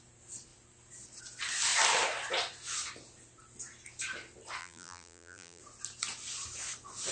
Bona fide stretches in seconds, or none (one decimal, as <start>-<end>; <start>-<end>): 0.0-4.6; 5.6-7.1